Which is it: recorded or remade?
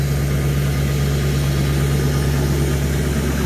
recorded